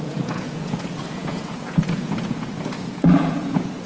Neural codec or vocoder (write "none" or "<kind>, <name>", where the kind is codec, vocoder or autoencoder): vocoder, Vocos